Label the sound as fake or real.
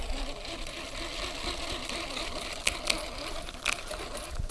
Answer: real